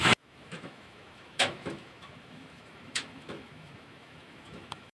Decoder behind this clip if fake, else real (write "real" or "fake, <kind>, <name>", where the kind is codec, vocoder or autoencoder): fake, autoencoder, DAC-VAE